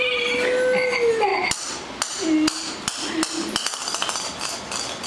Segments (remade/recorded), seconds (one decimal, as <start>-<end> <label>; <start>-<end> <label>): 0.0-5.1 recorded